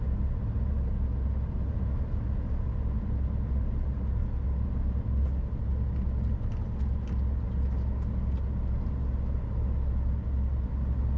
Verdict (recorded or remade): recorded